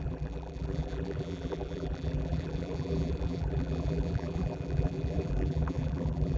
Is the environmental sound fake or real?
fake